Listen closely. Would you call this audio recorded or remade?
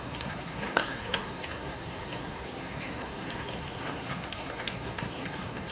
remade